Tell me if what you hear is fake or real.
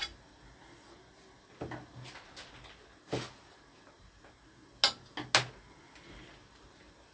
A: real